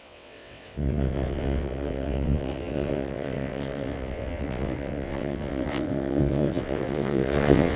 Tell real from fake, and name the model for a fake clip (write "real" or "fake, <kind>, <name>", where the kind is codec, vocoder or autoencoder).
fake, vocoder, WaveNeXt